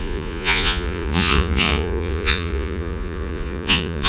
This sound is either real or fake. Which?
fake